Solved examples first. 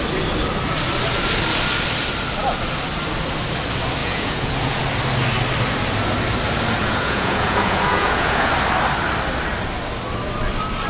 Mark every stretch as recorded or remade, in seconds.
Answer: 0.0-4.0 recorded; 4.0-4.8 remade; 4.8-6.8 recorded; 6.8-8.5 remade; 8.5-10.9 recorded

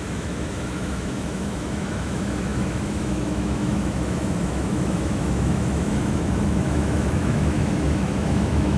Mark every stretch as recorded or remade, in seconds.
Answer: 0.0-8.8 remade

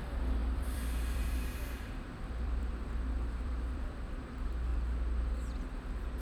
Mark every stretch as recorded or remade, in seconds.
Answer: 0.0-0.4 recorded; 0.4-4.1 remade; 4.1-6.2 recorded

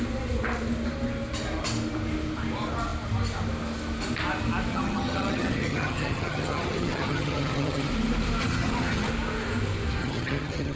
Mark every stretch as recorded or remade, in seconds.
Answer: 0.0-4.7 recorded; 4.7-7.9 remade; 7.9-8.4 recorded; 8.4-9.1 remade; 9.1-10.0 recorded; 10.0-10.8 remade